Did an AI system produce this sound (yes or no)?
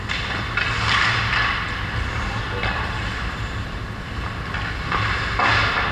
no